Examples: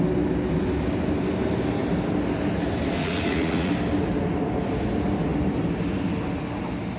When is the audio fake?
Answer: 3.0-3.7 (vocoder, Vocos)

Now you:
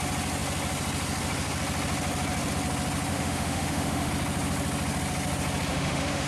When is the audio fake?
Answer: 3.1-4.1 (autoencoder, DAC-VAE); 5.7-6.3

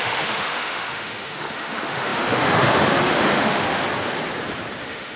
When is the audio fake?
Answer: 0.0-3.8 (autoencoder, DAC-VAE); 4.8-5.2

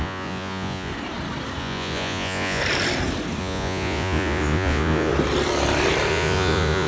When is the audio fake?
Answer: 0.0-0.9 (vocoder, Vocos); 1.6-2.6; 3.4-5.1; 6.1-6.9

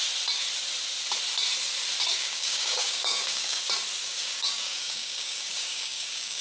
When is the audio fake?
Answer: 2.1-3.6 (codec, DAC); 4.0-6.4

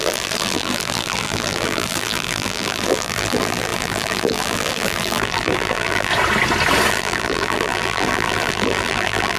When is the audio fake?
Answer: 0.0-6.1 (vocoder, BigVGAN v2); 6.9-9.4

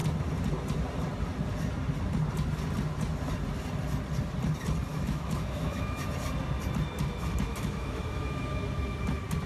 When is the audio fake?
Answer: 4.9-6.0 (autoencoder, DAC-VAE); 7.5-8.4